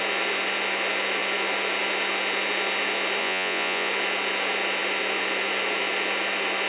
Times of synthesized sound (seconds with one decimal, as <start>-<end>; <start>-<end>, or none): 3.2-3.9